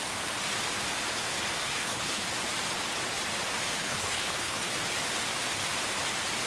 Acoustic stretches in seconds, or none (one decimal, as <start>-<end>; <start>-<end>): 0.0-1.6; 2.3-3.8; 4.7-6.5